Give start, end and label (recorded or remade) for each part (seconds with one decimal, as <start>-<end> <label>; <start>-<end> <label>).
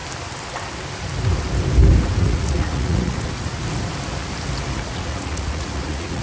0.0-2.2 recorded; 2.2-3.6 remade; 3.6-4.8 recorded; 4.8-6.2 remade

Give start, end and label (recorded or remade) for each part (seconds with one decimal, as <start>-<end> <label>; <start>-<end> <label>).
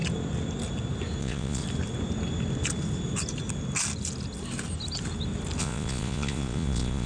0.0-1.2 recorded; 1.2-1.6 remade; 1.6-5.6 recorded; 5.6-7.1 remade